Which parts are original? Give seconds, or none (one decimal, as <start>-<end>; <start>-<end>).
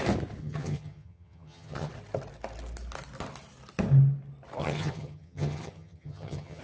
0.0-0.4; 1.9-4.6